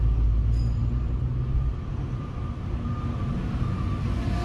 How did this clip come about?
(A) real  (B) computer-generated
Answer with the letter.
A